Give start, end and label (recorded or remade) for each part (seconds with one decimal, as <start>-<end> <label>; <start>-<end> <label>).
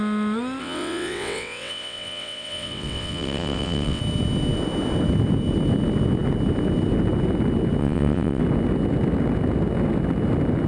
0.0-0.6 recorded; 0.6-4.0 remade; 4.0-7.8 recorded; 7.8-8.4 remade; 8.4-10.7 recorded